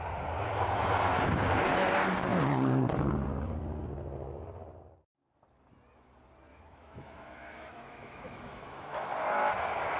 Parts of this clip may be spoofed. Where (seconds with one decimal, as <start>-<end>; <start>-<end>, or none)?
6.5-9.1